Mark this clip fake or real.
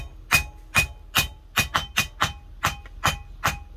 real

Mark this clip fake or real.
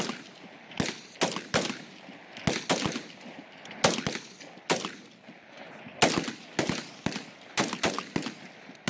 real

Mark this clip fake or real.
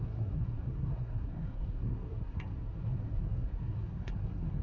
fake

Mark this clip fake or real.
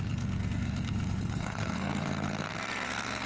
fake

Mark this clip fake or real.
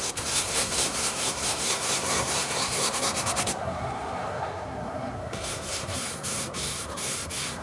fake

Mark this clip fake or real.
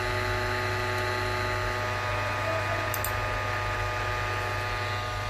real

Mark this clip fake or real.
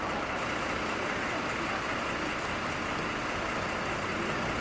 real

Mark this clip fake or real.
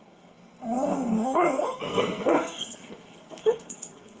fake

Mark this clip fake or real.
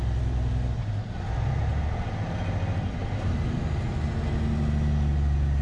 real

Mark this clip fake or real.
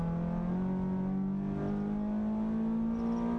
real